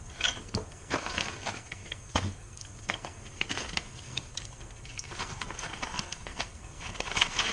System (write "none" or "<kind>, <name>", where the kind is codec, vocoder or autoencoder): codec, SNAC